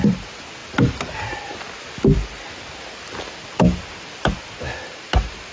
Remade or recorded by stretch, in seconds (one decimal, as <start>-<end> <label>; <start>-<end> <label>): 0.0-5.5 recorded